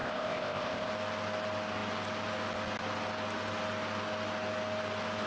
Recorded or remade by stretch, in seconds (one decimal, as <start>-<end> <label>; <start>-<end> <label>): 0.0-0.9 remade; 0.9-5.3 recorded